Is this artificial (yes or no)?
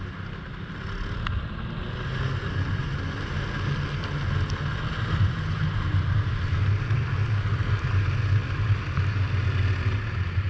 no